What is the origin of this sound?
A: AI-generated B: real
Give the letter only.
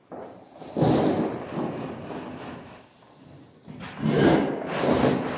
B